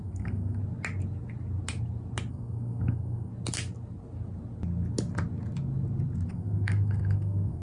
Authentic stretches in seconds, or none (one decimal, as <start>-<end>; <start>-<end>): 0.6-2.3; 3.3-6.3